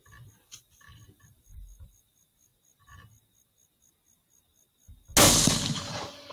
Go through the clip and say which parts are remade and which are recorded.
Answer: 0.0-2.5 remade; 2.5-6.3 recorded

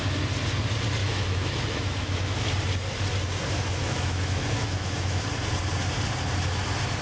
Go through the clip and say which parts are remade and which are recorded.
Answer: 0.0-1.0 recorded; 1.0-2.4 remade; 2.4-3.8 recorded; 3.8-5.2 remade; 5.2-7.0 recorded

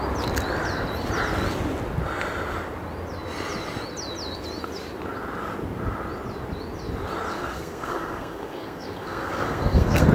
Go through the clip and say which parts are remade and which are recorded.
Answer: 0.0-7.3 recorded; 7.3-10.1 remade

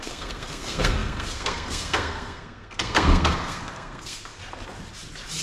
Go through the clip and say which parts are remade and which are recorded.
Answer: 0.0-4.4 remade; 4.4-5.4 recorded

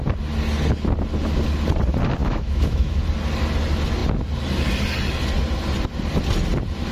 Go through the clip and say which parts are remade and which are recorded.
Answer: 0.0-2.2 recorded; 2.2-3.0 remade; 3.0-6.9 recorded

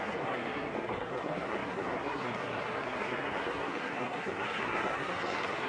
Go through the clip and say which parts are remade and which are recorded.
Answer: 0.0-5.7 remade